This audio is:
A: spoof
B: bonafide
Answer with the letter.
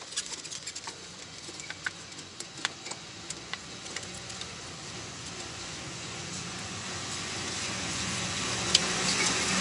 A